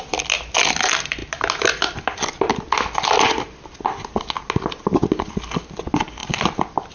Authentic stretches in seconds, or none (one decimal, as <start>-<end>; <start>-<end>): 0.0-6.9